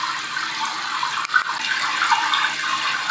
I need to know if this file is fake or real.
real